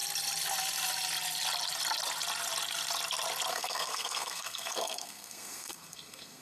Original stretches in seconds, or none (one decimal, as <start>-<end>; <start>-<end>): 0.0-3.5